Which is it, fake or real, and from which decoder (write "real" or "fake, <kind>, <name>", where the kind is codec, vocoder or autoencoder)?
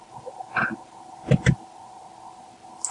real